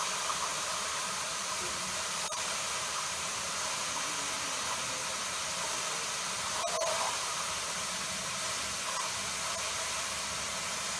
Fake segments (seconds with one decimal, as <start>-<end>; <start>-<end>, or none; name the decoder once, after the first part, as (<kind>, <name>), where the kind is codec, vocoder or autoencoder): 0.5-3.4 (vocoder, BigVGAN v2)